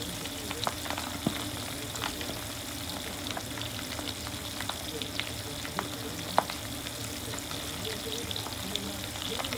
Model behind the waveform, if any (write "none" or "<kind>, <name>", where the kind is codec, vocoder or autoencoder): none